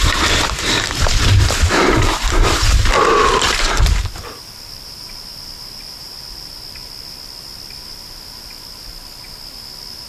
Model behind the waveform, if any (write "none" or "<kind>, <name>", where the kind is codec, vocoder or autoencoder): vocoder, BigVGAN v2